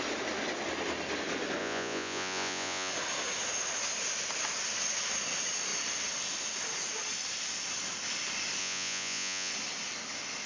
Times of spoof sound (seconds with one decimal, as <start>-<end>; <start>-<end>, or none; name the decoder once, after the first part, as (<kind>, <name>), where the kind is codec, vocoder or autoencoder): 1.6-2.9 (vocoder, Vocos); 8.6-9.5